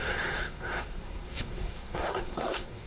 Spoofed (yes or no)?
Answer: yes